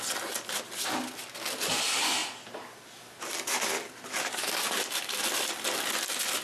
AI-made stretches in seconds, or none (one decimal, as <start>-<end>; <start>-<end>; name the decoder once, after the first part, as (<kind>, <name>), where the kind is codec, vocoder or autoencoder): none